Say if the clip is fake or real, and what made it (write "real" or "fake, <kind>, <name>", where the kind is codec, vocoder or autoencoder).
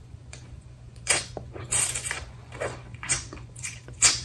fake, vocoder, Vocos